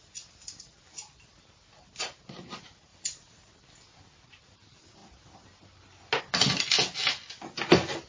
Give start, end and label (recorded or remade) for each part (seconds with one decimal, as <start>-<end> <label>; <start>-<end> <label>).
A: 0.0-2.9 recorded; 2.9-3.5 remade; 3.5-8.1 recorded